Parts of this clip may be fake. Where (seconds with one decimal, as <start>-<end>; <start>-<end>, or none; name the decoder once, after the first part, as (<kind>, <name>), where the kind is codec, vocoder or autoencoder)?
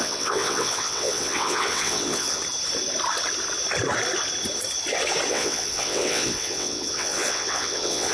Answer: 0.0-2.4 (vocoder, WaveNeXt); 5.3-8.1